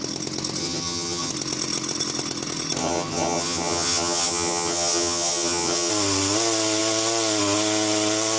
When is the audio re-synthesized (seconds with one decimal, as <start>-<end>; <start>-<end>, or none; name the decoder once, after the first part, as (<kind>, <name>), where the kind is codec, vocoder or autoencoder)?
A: 0.6-1.3 (vocoder, HiFi-GAN); 2.8-5.9